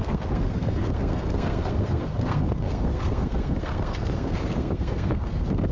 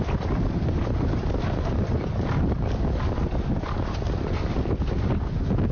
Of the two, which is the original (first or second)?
second